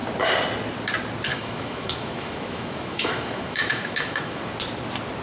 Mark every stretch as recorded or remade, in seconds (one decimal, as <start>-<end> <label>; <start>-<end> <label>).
0.0-1.3 recorded; 1.3-4.4 remade; 4.4-5.2 recorded